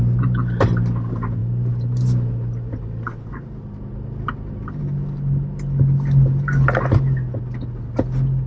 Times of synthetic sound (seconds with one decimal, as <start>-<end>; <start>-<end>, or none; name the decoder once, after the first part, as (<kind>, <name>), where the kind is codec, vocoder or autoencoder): none